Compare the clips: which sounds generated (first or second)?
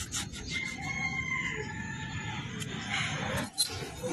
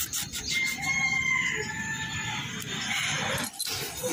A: first